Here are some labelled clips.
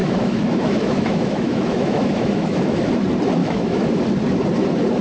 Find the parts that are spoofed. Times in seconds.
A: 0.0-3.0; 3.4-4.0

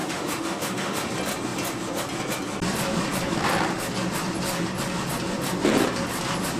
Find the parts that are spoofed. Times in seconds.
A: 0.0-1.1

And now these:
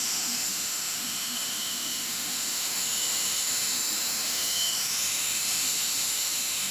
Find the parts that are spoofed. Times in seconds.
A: 0.0-6.7